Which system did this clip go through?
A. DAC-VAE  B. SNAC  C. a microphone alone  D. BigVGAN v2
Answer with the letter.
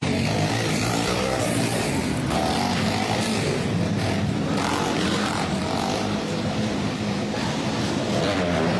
D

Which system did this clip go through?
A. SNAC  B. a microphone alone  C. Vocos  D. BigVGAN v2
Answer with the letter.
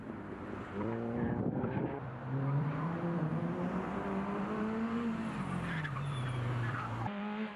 D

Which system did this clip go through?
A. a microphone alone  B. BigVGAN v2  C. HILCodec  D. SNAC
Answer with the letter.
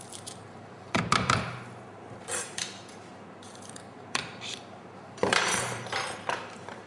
B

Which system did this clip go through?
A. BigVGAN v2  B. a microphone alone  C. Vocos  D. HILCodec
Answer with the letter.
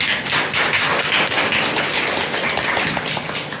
B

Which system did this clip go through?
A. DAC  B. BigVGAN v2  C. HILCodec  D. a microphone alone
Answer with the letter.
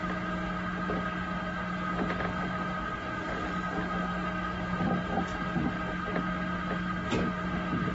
D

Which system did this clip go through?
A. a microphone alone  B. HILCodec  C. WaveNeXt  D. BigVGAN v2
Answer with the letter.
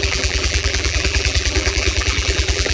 D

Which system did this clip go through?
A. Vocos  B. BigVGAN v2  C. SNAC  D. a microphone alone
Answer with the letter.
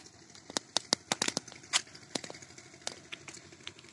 D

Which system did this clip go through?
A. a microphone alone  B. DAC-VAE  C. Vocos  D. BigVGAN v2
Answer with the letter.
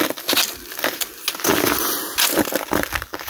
A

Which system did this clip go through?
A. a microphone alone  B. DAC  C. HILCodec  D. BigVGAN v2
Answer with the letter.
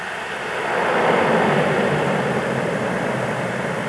A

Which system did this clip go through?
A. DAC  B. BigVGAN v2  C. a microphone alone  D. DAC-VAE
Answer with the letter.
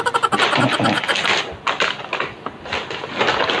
C